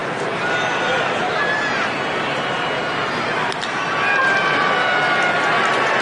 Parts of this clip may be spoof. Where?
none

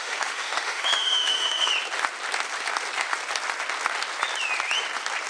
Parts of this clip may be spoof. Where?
0.0-1.7

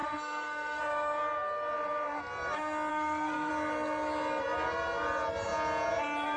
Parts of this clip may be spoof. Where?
0.0-0.8; 2.9-3.5